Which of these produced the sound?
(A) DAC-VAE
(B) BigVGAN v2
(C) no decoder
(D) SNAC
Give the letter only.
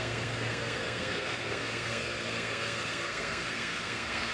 D